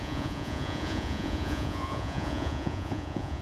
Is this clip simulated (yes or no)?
yes